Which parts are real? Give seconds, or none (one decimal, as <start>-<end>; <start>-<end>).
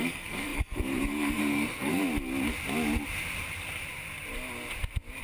2.0-5.2